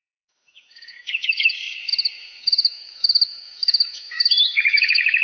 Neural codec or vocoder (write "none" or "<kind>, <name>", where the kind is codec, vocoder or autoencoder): autoencoder, DAC-VAE